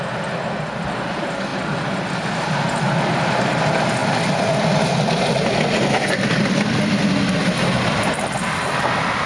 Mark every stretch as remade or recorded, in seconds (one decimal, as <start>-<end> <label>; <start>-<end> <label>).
0.0-9.3 recorded